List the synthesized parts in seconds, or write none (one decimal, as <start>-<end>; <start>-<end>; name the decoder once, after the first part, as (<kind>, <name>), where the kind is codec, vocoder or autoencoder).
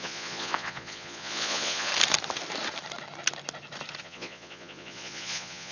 0.0-1.9 (vocoder, Vocos); 4.0-5.7